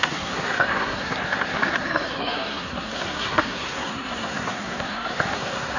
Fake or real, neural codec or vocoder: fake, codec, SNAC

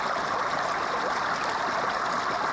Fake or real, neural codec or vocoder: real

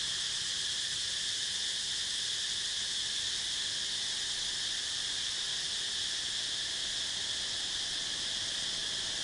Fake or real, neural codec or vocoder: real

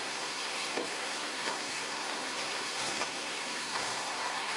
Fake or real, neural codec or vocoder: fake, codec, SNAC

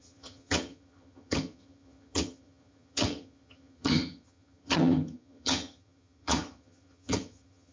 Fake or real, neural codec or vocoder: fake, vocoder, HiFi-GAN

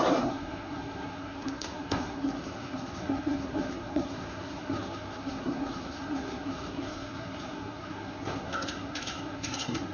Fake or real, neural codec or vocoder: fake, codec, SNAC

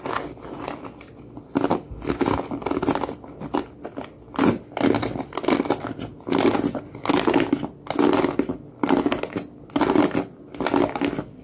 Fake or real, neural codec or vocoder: real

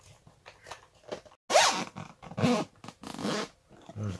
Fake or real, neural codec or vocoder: real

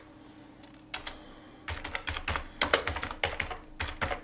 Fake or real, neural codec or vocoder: real